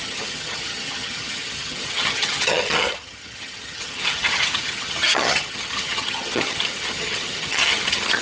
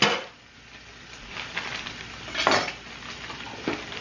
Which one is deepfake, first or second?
first